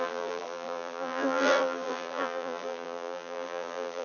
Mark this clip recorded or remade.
remade